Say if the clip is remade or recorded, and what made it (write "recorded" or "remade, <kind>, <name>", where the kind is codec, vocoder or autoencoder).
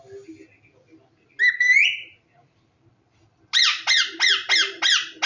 recorded